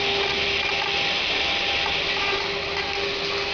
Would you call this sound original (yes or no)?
yes